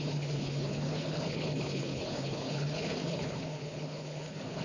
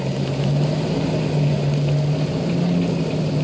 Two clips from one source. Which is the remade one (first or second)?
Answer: first